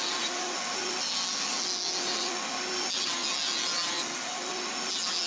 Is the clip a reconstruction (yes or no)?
no